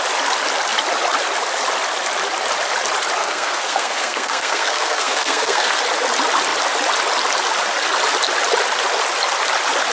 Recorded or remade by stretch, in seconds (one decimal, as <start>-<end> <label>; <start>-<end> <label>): 0.0-3.2 recorded; 3.2-5.8 remade; 5.8-9.9 recorded